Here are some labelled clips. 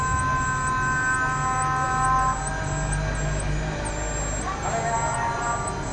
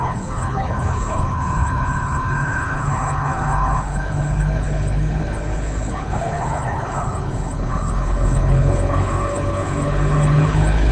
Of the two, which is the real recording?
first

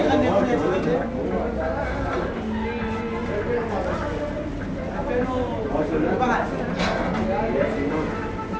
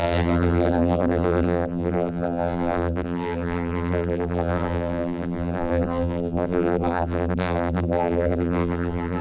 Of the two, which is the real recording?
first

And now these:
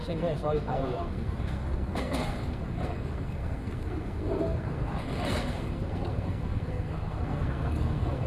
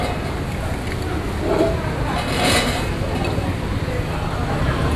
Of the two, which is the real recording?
second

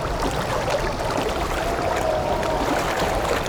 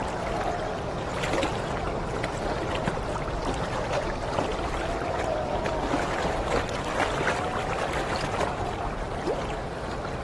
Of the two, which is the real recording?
first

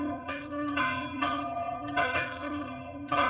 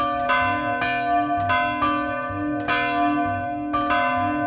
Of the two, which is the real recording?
second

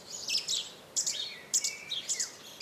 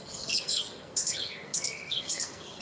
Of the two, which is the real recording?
first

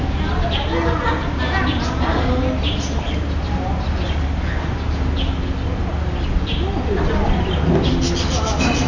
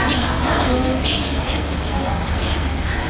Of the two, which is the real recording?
first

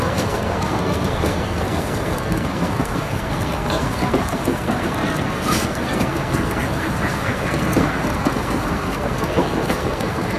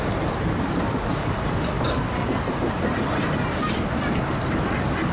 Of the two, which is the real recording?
second